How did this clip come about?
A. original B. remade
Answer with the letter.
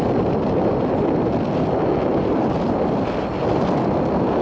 A